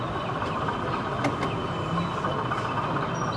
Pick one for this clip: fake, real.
real